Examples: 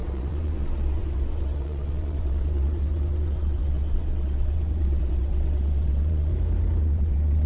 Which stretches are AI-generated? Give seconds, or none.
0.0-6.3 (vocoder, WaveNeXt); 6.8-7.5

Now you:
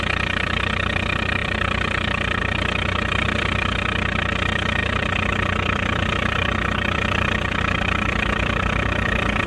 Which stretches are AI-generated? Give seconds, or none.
4.8-7.6 (vocoder, BigVGAN v2)

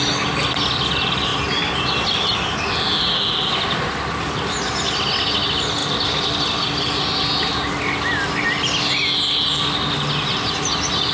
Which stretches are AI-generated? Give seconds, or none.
none

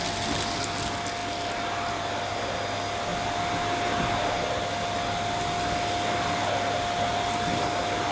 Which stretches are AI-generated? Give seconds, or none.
none

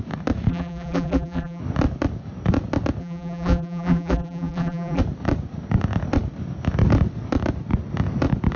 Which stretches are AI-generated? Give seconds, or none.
0.5-1.6 (vocoder, BigVGAN v2); 3.0-5.0